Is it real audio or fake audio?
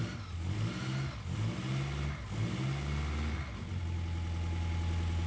real